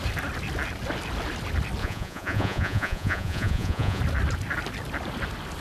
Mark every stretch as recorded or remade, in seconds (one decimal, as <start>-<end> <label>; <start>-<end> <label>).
0.0-1.8 recorded; 1.8-4.0 remade; 4.0-5.6 recorded